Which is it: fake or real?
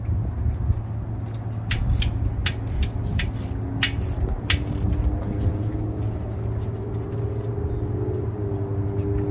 real